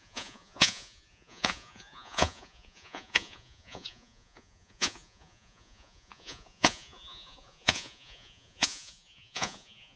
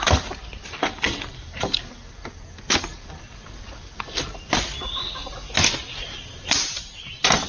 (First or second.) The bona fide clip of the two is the second